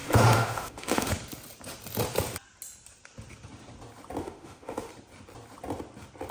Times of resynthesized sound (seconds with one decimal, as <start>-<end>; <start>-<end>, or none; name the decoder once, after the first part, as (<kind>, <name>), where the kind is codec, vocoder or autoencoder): 0.0-1.1 (autoencoder, DAC-VAE); 4.2-4.9